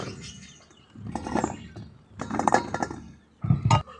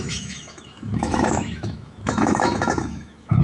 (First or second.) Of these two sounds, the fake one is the second